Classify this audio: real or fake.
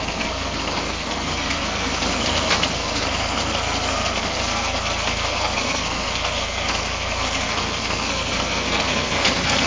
fake